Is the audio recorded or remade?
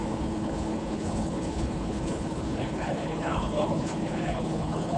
remade